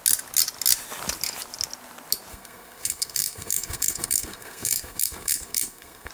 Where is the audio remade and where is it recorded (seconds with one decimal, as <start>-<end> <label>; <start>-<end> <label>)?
0.0-2.3 recorded; 2.3-6.1 remade